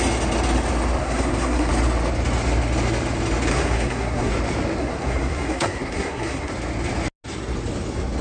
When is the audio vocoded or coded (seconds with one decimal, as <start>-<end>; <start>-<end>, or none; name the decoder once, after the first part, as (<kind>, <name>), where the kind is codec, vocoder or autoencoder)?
1.0-1.7 (codec, SNAC); 3.5-4.3; 4.8-6.5